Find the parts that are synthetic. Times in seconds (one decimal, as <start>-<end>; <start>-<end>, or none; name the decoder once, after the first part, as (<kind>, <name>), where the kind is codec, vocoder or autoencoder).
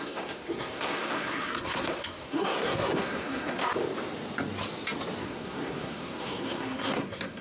0.0-3.6 (codec, SNAC); 5.2-7.4